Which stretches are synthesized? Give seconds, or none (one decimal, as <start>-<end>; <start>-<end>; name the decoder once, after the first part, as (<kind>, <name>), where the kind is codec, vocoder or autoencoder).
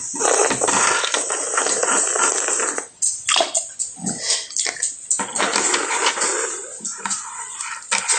none